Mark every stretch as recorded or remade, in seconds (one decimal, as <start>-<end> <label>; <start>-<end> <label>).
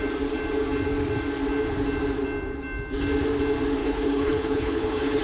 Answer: 0.0-3.8 recorded; 3.8-5.2 remade